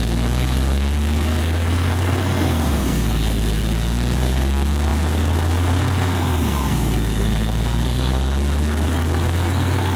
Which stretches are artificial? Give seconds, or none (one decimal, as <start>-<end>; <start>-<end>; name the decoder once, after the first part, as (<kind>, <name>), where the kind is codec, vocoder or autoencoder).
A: 0.0-10.0 (codec, SNAC)